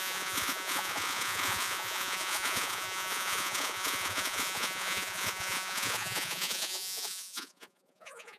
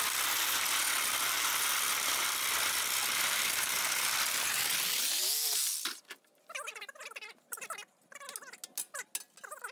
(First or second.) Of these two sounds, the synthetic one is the first